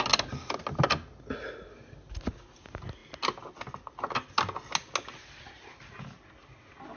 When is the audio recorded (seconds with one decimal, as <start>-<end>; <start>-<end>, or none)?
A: 0.0-7.0